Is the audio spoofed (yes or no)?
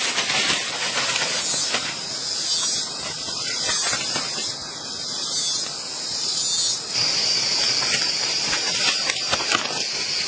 no